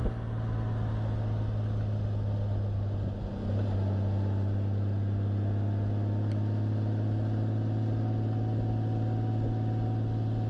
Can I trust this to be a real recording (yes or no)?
yes